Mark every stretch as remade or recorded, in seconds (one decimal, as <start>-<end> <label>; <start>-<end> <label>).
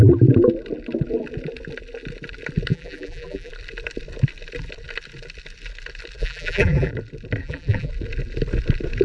0.0-2.7 recorded; 2.7-3.5 remade; 3.5-6.2 recorded; 6.2-6.9 remade; 6.9-7.4 recorded; 7.4-7.9 remade; 7.9-9.0 recorded